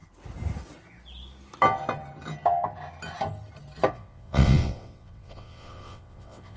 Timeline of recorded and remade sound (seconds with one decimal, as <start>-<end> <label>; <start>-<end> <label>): 0.0-3.9 recorded; 3.9-6.6 remade

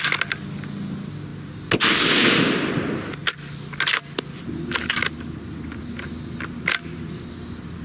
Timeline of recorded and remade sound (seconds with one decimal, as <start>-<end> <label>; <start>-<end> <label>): 0.0-7.8 recorded

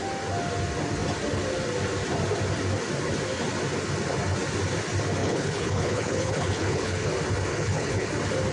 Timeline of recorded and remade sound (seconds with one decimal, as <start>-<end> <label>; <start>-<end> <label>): 0.0-5.2 recorded; 5.2-7.1 remade; 7.1-7.5 recorded; 7.5-8.1 remade; 8.1-8.5 recorded

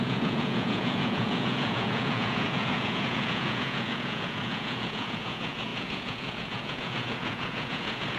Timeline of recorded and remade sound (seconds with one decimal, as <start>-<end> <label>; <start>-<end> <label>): 0.0-8.2 remade